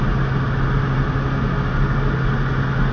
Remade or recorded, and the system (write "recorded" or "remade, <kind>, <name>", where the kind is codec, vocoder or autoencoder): recorded